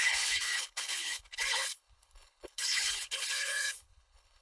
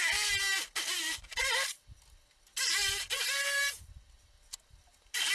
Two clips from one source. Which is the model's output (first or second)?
first